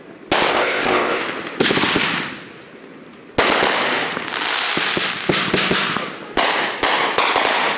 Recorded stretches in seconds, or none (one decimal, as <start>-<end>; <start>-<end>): 0.0-0.5; 1.2-7.8